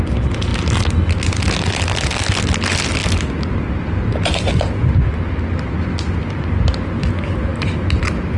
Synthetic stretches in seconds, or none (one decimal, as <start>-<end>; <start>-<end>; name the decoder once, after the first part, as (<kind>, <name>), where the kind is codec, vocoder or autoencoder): none